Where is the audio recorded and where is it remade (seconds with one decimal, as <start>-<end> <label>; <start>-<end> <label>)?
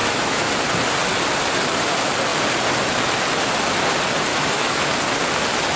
0.0-0.5 remade; 0.5-4.3 recorded; 4.3-4.9 remade; 4.9-5.8 recorded